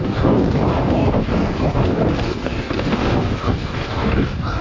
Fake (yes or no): yes